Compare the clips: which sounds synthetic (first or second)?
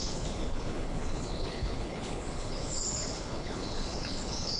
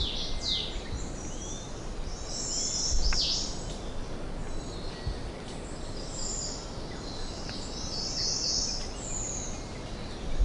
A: first